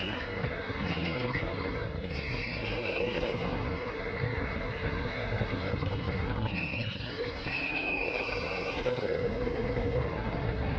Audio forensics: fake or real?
fake